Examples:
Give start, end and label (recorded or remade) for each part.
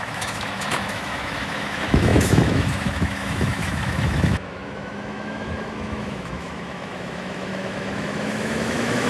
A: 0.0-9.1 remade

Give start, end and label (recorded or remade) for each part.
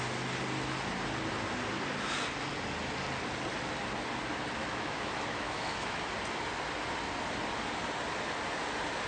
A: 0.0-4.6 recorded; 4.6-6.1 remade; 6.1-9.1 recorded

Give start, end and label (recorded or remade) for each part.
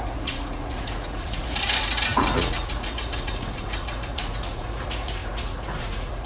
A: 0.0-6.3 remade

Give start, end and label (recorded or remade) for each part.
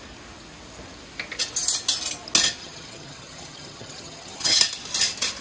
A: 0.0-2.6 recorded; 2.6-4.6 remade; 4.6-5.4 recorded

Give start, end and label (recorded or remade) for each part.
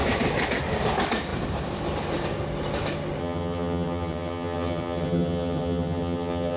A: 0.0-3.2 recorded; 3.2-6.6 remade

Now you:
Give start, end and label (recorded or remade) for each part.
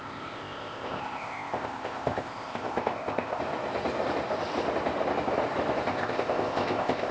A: 0.0-3.4 remade; 3.4-5.9 recorded; 5.9-7.1 remade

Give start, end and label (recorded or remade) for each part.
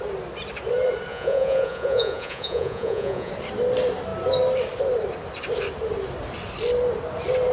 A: 0.0-1.1 recorded; 1.1-3.3 remade; 3.3-7.5 recorded